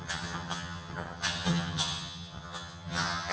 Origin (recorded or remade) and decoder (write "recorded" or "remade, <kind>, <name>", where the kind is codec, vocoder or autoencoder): remade, vocoder, HiFi-GAN